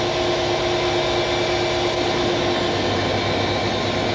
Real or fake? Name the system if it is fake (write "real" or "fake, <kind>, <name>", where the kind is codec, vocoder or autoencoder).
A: real